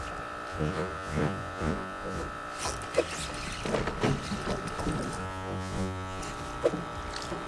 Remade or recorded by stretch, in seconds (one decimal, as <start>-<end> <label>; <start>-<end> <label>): 0.0-0.5 recorded; 0.5-2.2 remade; 2.2-5.2 recorded; 5.2-6.2 remade; 6.2-7.5 recorded